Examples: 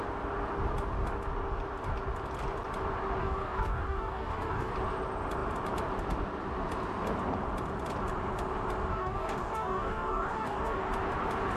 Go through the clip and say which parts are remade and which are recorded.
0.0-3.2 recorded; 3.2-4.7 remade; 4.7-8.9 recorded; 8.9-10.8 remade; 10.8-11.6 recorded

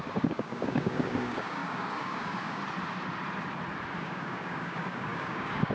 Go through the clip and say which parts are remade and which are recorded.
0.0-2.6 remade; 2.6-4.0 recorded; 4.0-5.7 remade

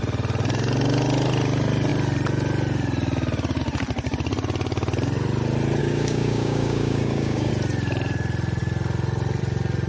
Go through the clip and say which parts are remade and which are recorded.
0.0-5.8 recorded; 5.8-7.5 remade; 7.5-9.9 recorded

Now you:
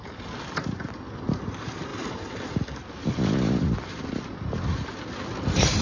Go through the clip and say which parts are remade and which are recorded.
0.0-5.8 recorded

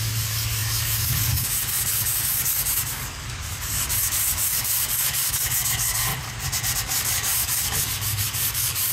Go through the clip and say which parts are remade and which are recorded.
0.0-6.1 remade; 6.1-6.8 recorded; 6.8-8.9 remade

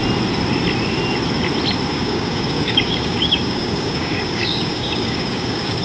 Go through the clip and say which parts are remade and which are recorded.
0.0-1.9 recorded; 1.9-5.8 remade